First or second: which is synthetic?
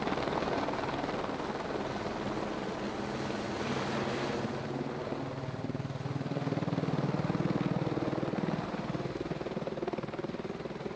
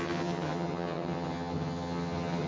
second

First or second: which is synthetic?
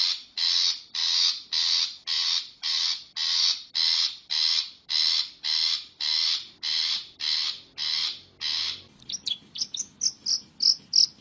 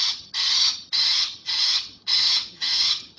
second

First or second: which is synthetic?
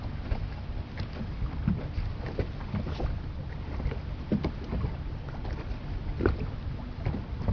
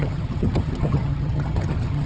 second